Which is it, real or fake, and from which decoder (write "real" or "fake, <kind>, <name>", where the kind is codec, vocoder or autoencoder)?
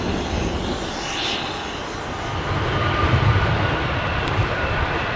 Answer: real